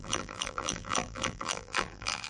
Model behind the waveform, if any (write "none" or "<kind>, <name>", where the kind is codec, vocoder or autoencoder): vocoder, BigVGAN v2